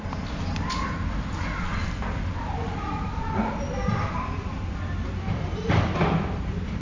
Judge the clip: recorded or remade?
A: recorded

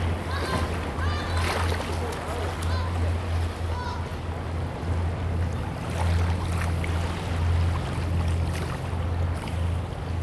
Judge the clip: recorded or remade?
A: recorded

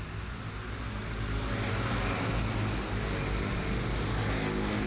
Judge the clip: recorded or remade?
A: recorded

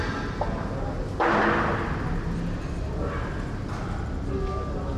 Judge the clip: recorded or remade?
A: recorded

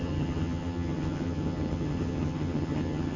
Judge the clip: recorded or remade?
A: remade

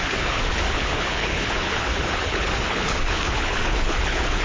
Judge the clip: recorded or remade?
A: remade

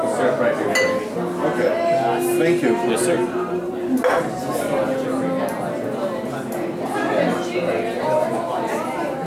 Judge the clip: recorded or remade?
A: recorded